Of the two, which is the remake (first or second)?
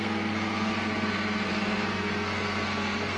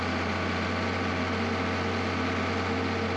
first